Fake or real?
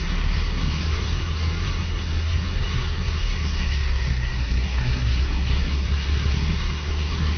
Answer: fake